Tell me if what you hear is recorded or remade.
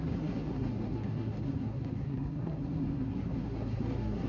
remade